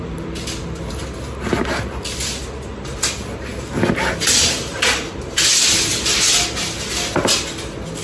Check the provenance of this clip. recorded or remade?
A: recorded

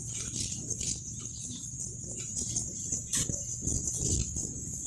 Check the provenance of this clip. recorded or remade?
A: recorded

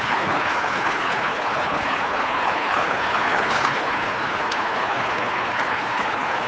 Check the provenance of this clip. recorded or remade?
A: remade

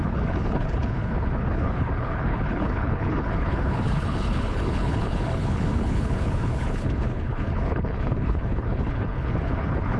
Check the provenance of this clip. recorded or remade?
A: remade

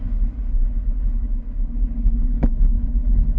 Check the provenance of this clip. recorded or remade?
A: remade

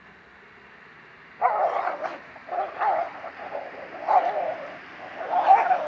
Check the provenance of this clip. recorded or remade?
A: recorded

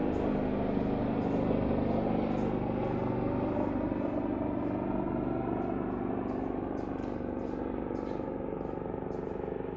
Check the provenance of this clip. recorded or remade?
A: recorded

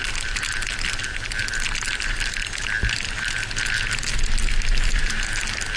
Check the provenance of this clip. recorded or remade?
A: recorded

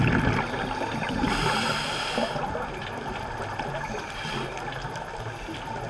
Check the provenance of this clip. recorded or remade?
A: recorded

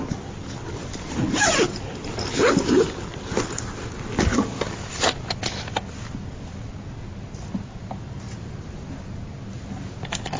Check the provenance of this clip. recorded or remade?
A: recorded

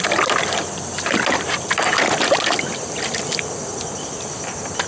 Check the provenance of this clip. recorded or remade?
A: recorded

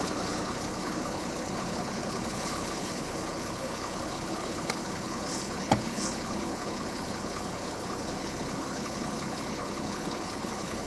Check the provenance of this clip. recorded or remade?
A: remade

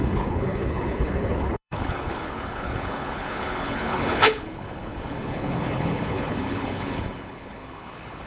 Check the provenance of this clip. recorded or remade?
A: remade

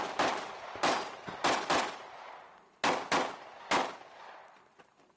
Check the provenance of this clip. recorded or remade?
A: recorded